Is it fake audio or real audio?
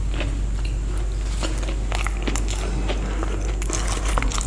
real